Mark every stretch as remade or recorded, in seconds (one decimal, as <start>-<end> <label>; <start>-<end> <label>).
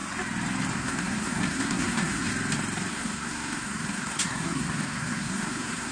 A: 0.0-0.7 recorded; 0.7-2.3 remade; 2.3-2.9 recorded; 2.9-5.9 remade